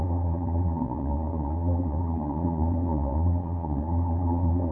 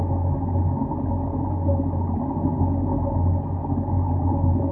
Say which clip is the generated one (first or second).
first